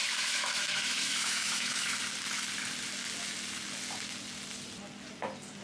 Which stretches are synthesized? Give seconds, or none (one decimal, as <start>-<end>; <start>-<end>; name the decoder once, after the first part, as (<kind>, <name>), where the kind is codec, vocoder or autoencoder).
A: 0.0-2.0 (autoencoder, DAC-VAE)

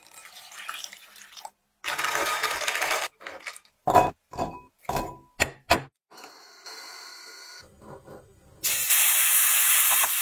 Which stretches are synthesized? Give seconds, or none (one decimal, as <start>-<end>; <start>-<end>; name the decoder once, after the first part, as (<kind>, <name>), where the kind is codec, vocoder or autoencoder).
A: none